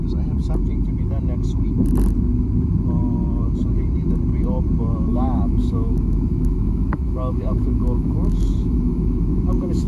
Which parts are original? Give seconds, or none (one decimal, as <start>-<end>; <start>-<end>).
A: 0.0-5.1